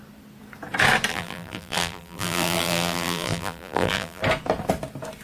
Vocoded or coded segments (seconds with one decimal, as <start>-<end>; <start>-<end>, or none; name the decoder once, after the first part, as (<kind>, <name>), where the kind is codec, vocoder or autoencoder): 1.1-4.2 (vocoder, BigVGAN v2)